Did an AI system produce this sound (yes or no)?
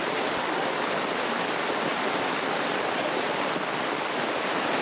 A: no